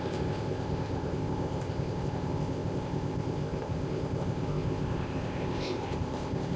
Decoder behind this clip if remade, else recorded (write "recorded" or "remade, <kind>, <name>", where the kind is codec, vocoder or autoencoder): remade, codec, ZipCodec